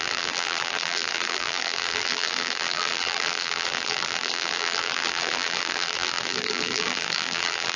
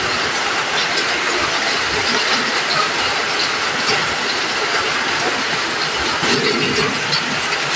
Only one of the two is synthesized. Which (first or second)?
first